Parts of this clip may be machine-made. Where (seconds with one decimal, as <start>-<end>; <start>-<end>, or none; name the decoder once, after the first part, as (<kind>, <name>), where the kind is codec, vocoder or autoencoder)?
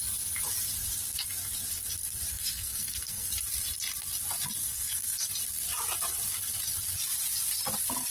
2.3-3.3 (codec, SNAC); 4.6-5.3